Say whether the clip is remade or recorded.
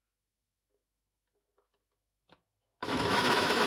remade